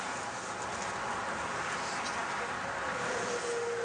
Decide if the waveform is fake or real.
real